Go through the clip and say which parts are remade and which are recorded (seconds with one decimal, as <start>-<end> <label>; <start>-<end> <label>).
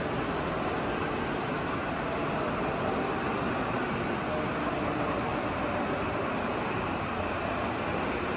0.0-8.4 recorded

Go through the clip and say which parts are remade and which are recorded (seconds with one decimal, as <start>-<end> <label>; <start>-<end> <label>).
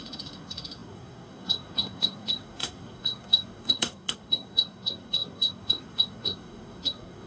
0.0-7.3 remade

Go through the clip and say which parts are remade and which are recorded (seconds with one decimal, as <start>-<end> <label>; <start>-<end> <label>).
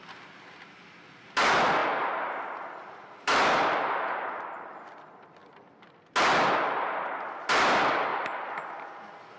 0.0-1.8 recorded; 1.8-5.0 remade; 5.0-8.1 recorded; 8.1-8.8 remade; 8.8-9.4 recorded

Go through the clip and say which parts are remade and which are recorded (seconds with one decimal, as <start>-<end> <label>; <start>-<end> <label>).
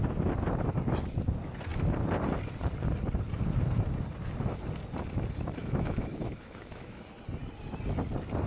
0.0-5.6 recorded; 5.6-7.0 remade; 7.0-8.5 recorded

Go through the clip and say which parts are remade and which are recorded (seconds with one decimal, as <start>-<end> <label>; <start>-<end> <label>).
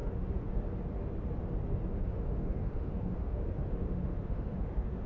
0.0-0.6 remade; 0.6-1.9 recorded; 1.9-5.1 remade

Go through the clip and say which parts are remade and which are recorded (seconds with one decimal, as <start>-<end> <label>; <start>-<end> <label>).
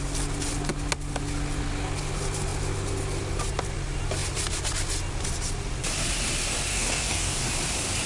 0.0-6.7 recorded; 6.7-7.4 remade; 7.4-8.1 recorded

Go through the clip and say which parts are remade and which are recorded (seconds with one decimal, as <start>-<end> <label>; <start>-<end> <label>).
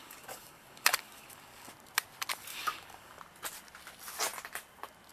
0.0-1.7 remade; 1.7-2.5 recorded; 2.5-3.2 remade; 3.2-5.1 recorded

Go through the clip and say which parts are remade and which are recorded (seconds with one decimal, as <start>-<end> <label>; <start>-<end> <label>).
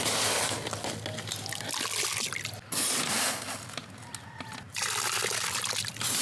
0.0-6.2 recorded